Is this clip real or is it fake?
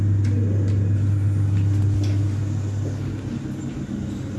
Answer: real